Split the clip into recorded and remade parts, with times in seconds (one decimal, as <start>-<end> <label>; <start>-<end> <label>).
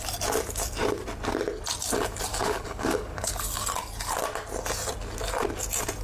0.0-2.3 recorded; 2.3-3.3 remade; 3.3-6.0 recorded